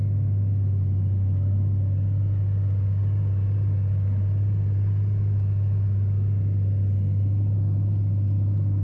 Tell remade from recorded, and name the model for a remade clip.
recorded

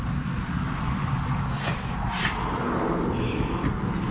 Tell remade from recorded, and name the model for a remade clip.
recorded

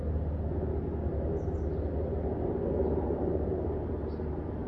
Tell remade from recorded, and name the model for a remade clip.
recorded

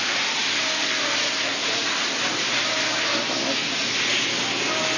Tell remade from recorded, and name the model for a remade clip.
recorded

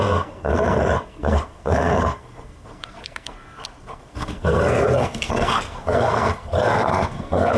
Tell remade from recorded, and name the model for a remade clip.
remade, codec, SNAC